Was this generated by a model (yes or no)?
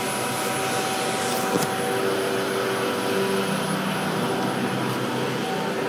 no